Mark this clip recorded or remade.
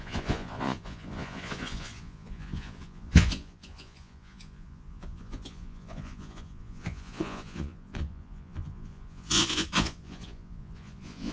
remade